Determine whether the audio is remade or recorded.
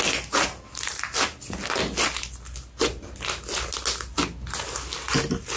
recorded